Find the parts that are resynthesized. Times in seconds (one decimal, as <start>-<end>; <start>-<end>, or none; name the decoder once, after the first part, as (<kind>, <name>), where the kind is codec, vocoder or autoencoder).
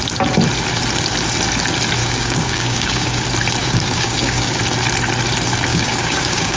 2.0-3.2 (codec, DAC); 3.6-4.6; 5.7-6.6